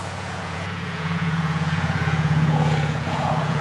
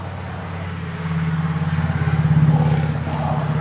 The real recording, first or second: second